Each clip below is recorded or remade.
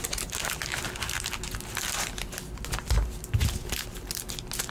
recorded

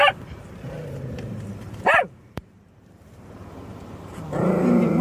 remade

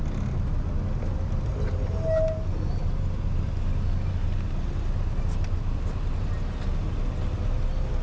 recorded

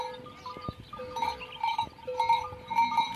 recorded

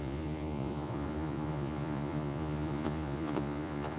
remade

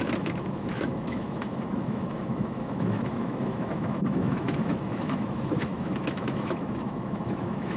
remade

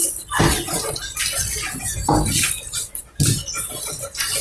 recorded